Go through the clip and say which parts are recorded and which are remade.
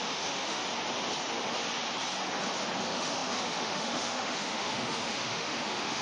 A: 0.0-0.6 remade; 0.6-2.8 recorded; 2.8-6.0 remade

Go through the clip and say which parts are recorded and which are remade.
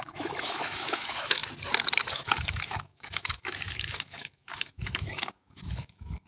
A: 0.0-1.4 remade; 1.4-2.1 recorded; 2.1-6.3 remade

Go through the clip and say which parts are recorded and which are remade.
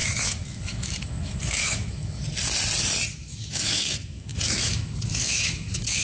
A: 0.0-2.2 remade; 2.2-3.1 recorded; 3.1-6.0 remade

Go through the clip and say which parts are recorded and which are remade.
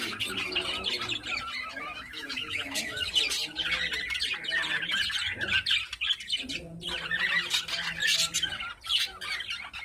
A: 0.0-1.8 recorded; 1.8-3.1 remade; 3.1-9.8 recorded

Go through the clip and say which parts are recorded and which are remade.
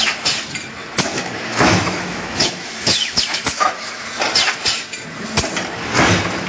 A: 0.0-0.8 recorded; 0.8-4.0 remade; 4.0-6.5 recorded